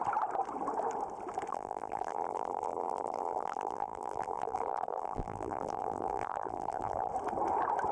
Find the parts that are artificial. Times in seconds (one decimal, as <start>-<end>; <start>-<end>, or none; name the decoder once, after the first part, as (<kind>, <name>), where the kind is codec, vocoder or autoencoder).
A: 1.5-7.1 (vocoder, BigVGAN v2)